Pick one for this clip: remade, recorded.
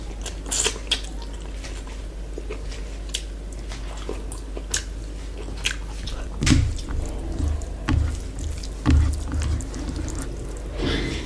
recorded